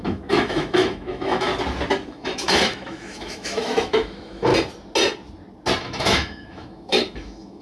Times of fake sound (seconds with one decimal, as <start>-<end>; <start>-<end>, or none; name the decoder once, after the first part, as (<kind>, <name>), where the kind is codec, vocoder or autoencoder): 0.0-1.5 (autoencoder, DAC-VAE); 2.1-4.5; 5.8-7.6